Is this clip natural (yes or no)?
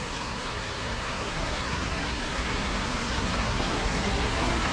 no